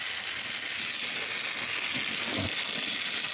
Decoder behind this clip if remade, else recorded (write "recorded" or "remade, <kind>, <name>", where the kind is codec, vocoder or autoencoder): recorded